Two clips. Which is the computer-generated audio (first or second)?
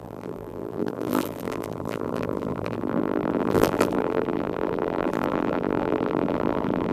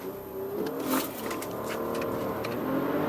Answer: first